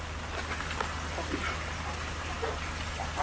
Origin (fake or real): real